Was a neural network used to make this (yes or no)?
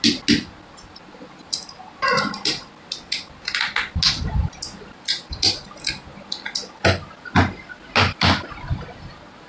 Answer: no